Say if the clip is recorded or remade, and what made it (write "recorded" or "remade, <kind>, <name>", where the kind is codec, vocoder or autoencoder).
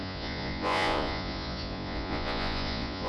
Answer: remade, vocoder, Vocos